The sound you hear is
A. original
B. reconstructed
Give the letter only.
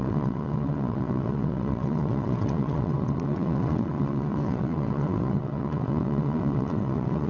B